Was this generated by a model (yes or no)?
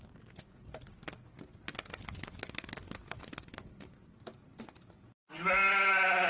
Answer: no